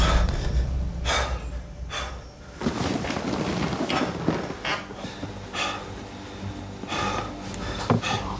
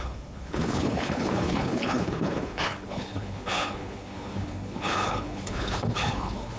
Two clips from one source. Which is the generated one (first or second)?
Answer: second